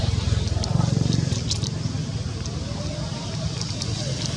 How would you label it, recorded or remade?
recorded